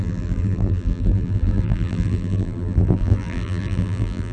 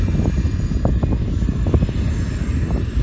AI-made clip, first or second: first